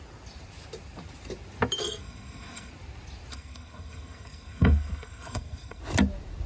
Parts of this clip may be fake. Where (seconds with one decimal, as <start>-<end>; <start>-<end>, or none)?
1.8-2.7; 3.3-5.8